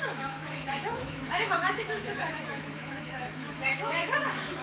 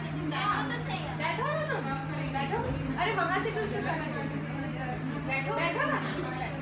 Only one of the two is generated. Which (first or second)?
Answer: first